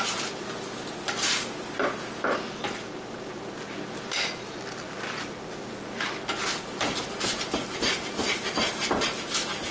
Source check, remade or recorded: recorded